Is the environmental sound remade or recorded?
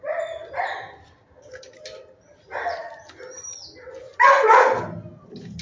recorded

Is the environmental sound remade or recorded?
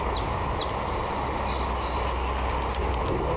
recorded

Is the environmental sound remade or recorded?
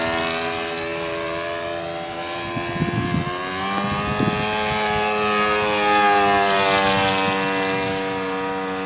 recorded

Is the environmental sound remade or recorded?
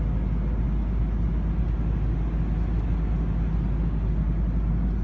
recorded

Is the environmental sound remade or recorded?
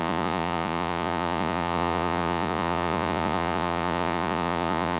remade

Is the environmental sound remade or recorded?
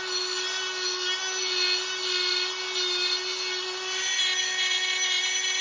recorded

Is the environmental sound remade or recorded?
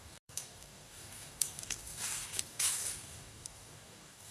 remade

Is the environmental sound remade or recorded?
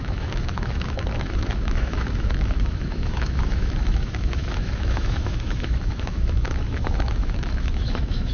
remade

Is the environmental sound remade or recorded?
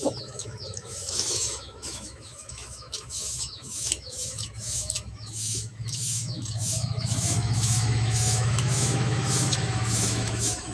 remade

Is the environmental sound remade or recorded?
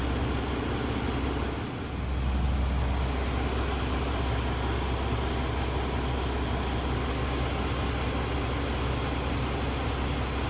recorded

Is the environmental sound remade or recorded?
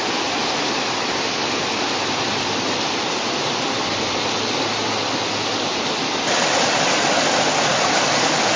recorded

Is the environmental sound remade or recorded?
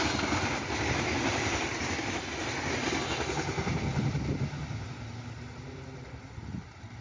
recorded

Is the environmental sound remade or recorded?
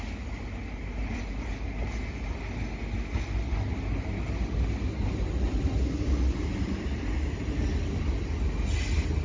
recorded